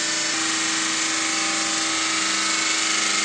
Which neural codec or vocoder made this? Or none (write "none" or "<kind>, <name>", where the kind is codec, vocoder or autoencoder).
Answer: none